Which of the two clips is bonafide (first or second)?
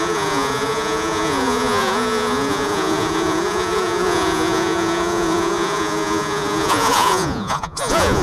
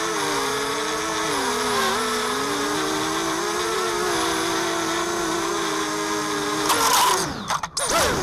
second